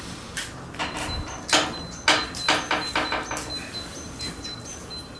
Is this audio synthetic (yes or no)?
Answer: no